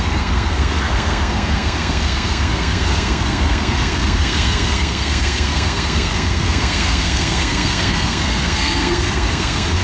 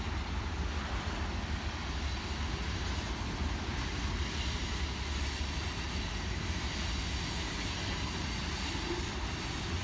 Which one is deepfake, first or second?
first